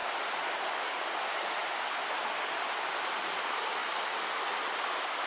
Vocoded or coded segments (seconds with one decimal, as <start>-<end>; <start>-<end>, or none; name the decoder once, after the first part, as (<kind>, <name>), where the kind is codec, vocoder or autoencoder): none